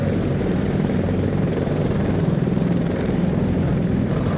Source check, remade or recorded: remade